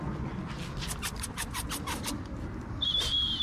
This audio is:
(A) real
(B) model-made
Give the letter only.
A